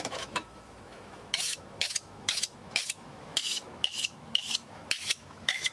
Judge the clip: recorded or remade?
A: remade